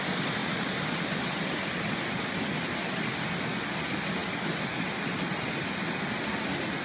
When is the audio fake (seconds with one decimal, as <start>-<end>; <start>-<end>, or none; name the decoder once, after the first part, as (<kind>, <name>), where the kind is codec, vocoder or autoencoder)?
none